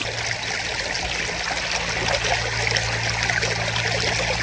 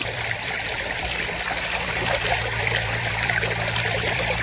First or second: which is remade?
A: second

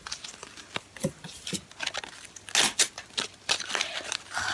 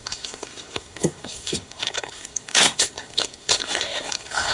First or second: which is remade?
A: second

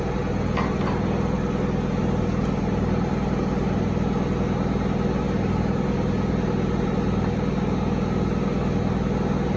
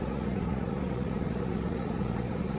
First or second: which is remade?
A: second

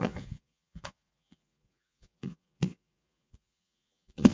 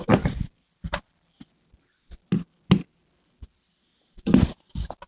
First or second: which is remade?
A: first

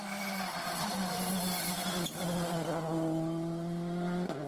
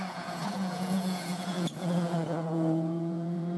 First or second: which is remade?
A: second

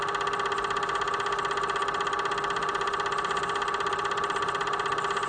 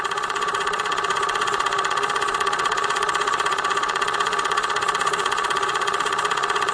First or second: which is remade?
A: second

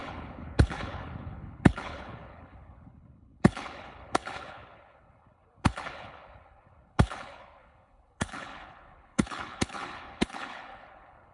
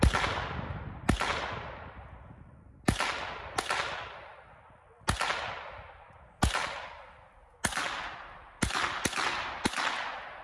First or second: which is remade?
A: first